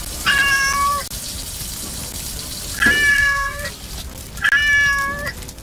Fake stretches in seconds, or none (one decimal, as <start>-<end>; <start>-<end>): 3.1-3.7